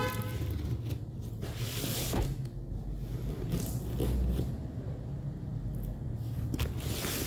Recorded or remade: recorded